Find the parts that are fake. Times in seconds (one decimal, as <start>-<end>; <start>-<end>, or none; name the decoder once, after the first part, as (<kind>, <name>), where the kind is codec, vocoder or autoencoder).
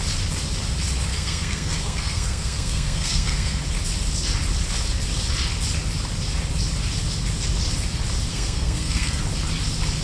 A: 1.1-3.6 (codec, SNAC); 8.3-9.2